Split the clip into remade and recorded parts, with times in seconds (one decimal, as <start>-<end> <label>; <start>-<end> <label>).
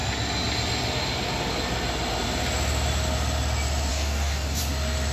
0.0-3.9 recorded; 3.9-4.6 remade; 4.6-5.1 recorded